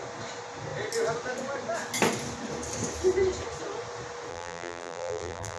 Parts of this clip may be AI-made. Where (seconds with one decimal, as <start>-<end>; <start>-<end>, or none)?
4.3-5.6